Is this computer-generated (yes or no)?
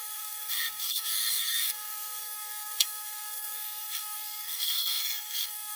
yes